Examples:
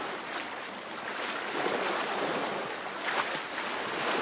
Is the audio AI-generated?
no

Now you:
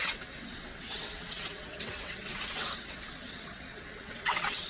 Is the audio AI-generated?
yes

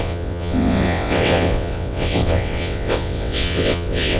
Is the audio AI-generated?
yes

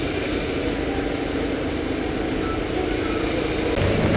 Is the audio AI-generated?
no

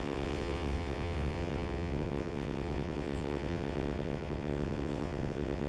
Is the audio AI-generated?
yes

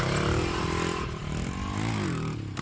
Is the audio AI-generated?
no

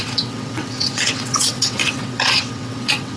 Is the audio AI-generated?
yes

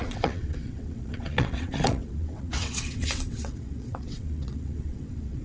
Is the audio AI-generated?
yes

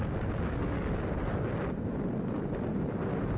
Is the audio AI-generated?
no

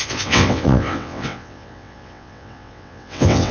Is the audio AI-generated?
yes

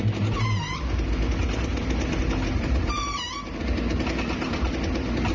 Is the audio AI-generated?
no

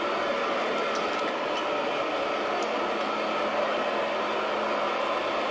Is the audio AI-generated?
no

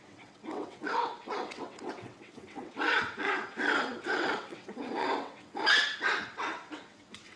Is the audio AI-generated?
yes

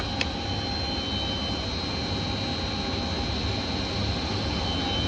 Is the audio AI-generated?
no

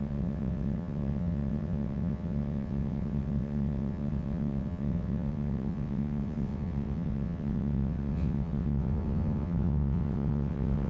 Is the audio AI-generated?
yes